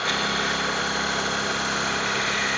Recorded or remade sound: recorded